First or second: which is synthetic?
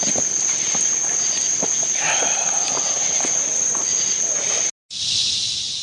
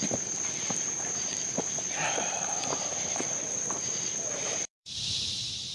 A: second